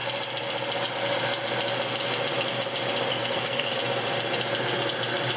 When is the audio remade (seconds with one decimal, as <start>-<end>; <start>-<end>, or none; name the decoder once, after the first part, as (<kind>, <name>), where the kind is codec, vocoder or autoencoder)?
3.1-3.7 (codec, SNAC)